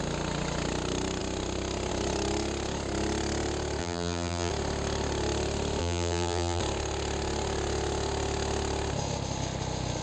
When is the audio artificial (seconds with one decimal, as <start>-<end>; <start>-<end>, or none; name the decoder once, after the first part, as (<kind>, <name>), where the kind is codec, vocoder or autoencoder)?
3.8-4.5 (vocoder, BigVGAN v2); 5.8-6.6